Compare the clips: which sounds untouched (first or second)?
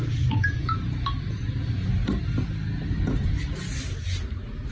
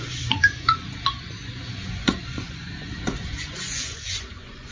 first